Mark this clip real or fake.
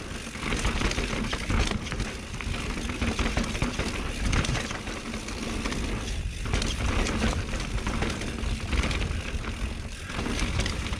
real